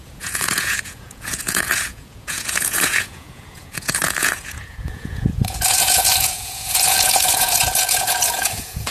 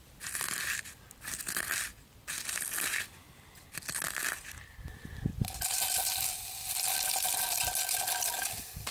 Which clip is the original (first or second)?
second